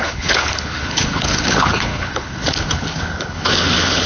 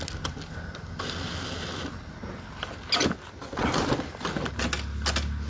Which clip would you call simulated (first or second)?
first